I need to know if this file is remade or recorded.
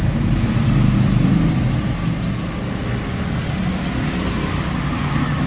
recorded